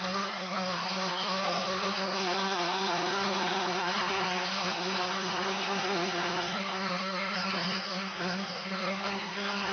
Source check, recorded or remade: remade